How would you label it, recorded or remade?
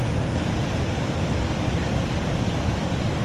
recorded